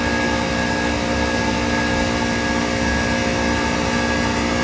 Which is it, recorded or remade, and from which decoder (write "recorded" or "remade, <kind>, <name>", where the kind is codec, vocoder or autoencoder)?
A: recorded